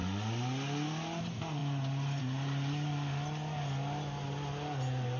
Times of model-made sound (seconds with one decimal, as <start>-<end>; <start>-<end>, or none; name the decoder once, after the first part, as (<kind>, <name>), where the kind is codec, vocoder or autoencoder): none